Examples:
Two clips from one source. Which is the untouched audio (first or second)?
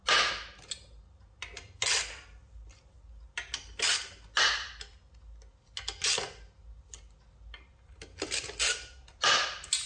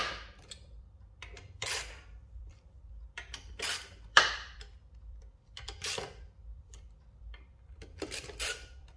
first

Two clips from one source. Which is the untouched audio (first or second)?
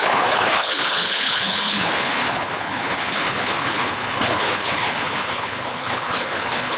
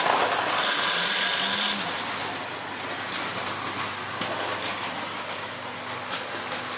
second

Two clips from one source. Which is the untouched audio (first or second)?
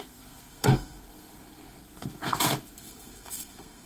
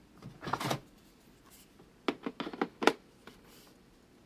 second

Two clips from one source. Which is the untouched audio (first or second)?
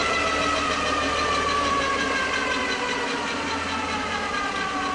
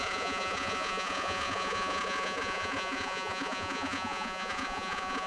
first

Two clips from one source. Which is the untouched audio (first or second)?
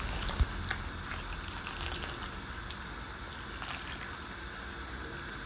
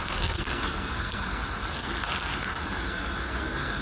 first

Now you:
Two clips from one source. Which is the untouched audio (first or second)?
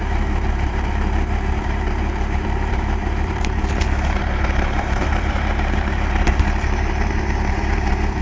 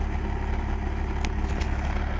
second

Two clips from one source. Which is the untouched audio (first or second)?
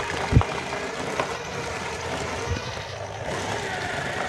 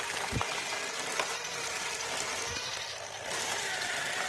second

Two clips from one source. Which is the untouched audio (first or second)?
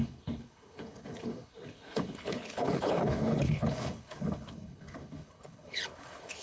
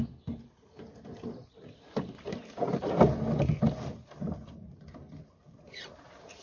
second